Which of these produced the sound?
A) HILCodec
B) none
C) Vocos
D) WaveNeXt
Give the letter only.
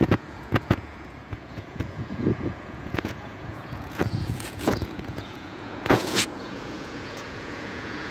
C